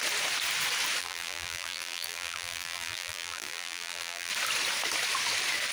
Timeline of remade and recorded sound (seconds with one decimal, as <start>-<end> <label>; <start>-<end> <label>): 0.0-1.0 recorded; 1.0-4.3 remade; 4.3-5.7 recorded